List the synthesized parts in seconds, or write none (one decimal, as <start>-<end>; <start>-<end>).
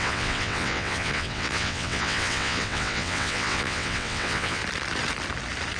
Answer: 0.0-4.6